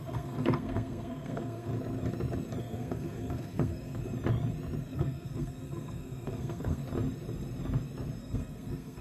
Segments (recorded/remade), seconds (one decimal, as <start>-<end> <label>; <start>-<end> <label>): 0.0-1.7 remade; 1.7-2.6 recorded; 2.6-4.0 remade; 4.0-4.8 recorded; 4.8-6.8 remade; 6.8-8.2 recorded; 8.2-9.0 remade